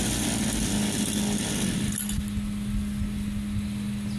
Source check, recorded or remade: recorded